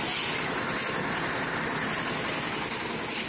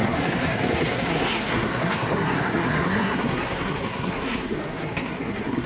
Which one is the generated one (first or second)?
second